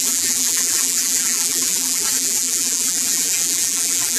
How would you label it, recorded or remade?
remade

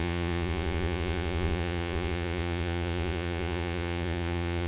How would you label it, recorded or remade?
remade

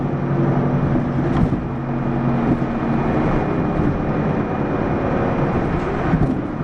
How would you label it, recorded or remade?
recorded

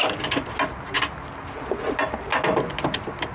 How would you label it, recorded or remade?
recorded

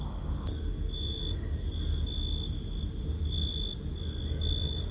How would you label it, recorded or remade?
recorded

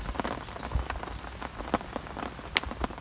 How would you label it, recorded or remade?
recorded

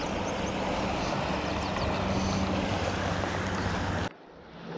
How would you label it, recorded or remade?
recorded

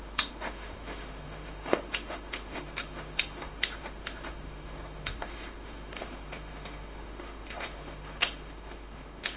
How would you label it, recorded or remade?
remade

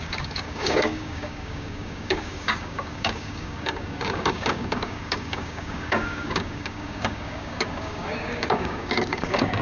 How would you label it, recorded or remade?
remade